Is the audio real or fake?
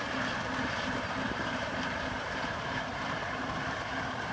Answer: fake